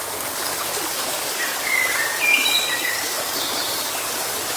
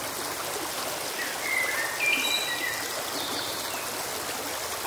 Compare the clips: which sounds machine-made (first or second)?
first